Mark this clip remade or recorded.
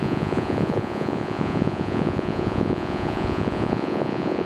remade